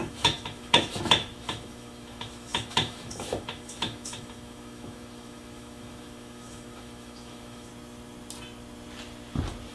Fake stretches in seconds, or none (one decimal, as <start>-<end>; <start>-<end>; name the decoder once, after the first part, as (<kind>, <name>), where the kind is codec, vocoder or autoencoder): 0.0-7.7 (autoencoder, DAC-VAE)